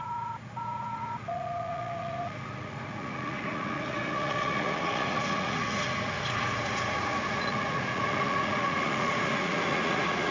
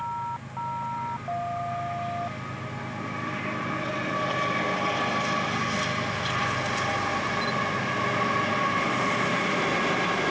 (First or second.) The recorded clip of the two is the second